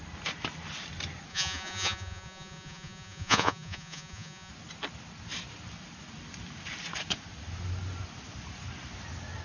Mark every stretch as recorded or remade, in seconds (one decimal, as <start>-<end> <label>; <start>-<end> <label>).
0.0-1.3 recorded; 1.3-4.5 remade; 4.5-9.4 recorded